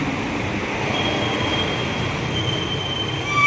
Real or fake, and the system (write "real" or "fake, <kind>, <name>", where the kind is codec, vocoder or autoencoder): real